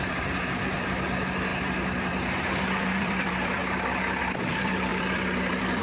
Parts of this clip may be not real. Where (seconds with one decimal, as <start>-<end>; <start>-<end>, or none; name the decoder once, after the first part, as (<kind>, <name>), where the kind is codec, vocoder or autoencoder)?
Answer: 0.0-3.6 (vocoder, BigVGAN v2); 4.2-5.8